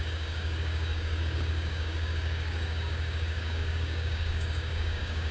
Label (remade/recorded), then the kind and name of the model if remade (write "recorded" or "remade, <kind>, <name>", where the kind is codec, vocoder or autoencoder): remade, codec, DAC